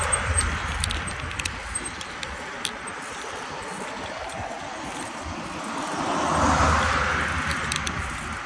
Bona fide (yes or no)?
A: yes